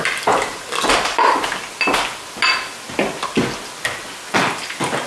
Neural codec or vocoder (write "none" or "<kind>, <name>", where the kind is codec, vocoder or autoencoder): none